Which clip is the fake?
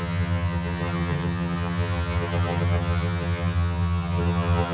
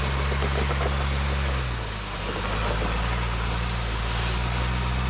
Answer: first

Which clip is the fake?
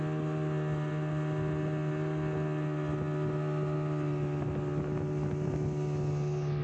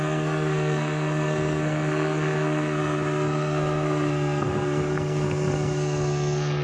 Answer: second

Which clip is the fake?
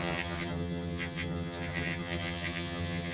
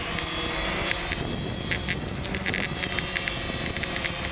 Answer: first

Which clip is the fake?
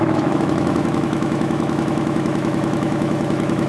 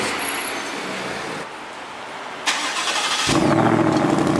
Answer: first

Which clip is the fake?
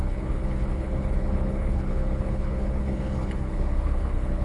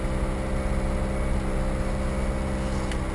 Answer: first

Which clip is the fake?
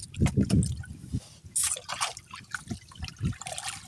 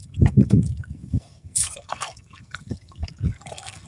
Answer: second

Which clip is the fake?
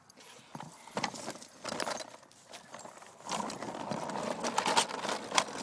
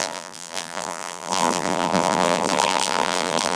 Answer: second